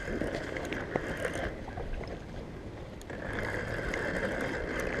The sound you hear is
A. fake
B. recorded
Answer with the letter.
B